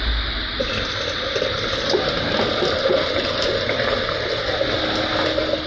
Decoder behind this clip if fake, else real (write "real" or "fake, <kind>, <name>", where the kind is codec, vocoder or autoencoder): real